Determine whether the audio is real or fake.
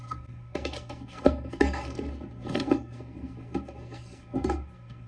fake